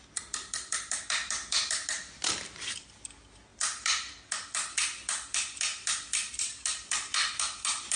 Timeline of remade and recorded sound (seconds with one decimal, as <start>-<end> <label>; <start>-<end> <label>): 0.0-8.0 recorded